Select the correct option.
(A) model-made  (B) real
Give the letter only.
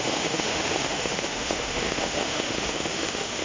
A